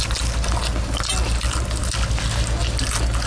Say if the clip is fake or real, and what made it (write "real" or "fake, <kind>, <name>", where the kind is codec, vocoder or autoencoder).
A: real